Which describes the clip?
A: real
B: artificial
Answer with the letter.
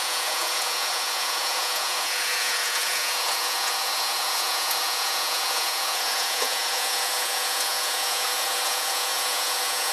B